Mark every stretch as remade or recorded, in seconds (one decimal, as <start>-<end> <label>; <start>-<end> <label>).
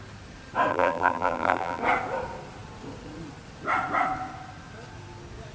0.0-0.7 recorded; 0.7-1.8 remade; 1.8-5.5 recorded